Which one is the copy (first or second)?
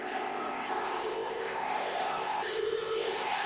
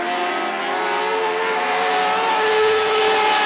first